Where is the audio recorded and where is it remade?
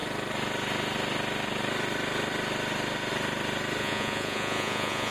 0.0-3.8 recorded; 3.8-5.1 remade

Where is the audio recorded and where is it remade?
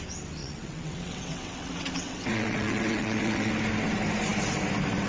0.0-0.4 recorded; 0.4-3.5 remade; 3.5-5.1 recorded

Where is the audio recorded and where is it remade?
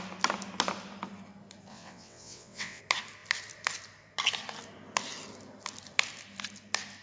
0.0-1.7 recorded; 1.7-2.8 remade; 2.8-7.0 recorded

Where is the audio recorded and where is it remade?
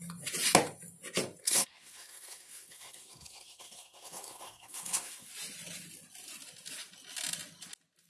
0.0-1.4 recorded; 1.4-5.3 remade; 5.3-8.1 recorded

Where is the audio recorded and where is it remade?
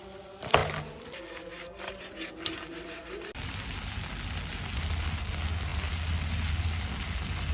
0.0-7.5 recorded